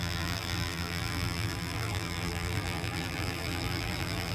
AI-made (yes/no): yes